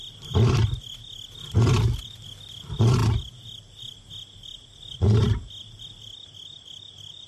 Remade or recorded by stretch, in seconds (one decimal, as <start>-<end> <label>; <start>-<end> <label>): 0.0-7.3 recorded